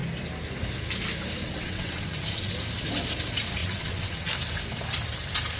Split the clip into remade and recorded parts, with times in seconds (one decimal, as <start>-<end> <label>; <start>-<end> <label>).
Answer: 0.0-1.4 recorded; 1.4-2.5 remade; 2.5-3.6 recorded; 3.6-4.3 remade; 4.3-5.6 recorded